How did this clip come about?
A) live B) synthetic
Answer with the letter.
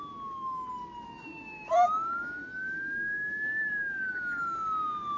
A